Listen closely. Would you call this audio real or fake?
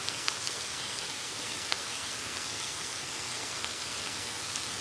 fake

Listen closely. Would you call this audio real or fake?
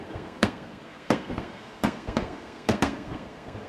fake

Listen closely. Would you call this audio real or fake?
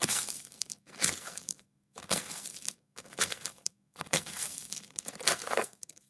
fake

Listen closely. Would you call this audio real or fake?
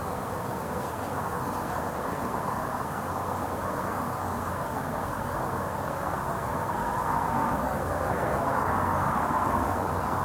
fake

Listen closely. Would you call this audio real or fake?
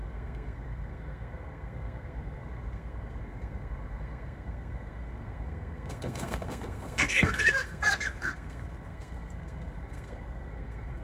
fake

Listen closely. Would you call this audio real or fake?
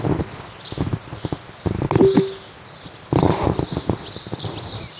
real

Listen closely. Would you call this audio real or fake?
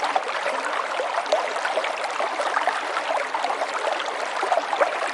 real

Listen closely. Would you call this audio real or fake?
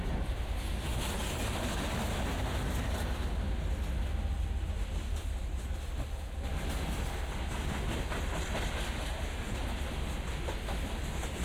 real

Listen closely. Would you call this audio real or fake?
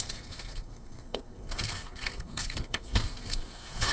fake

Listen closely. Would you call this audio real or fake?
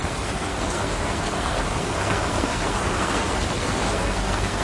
fake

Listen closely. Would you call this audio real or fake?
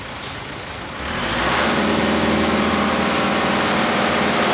real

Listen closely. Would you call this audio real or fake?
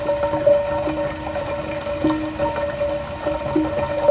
real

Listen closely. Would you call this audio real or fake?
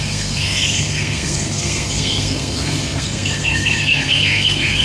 fake